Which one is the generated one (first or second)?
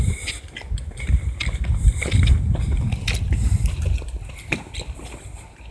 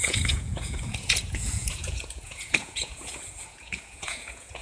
second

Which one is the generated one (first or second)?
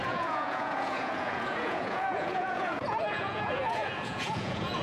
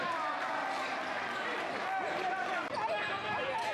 first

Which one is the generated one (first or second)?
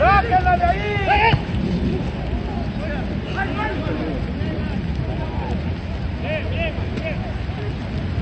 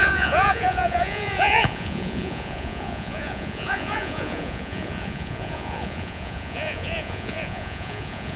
second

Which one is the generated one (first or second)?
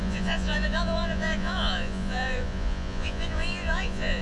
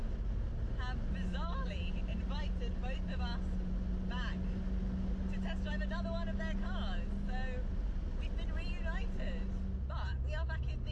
first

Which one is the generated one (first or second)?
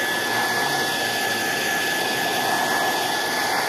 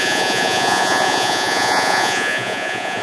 second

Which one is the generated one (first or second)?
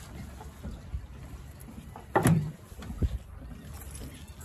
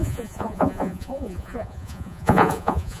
second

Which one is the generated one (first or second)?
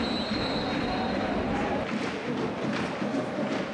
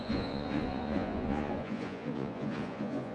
second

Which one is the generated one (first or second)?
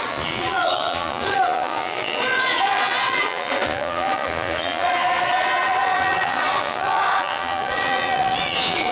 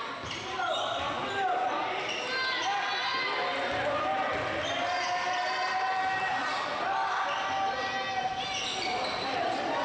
first